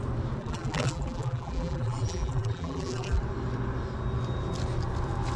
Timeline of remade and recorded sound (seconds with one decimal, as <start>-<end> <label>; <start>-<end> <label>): 0.0-0.4 recorded; 0.4-3.2 remade; 3.2-5.4 recorded

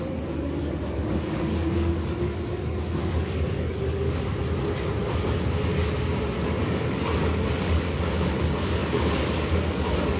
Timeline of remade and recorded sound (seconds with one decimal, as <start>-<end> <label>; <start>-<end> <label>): 0.0-4.4 remade; 4.4-6.6 recorded; 6.6-10.2 remade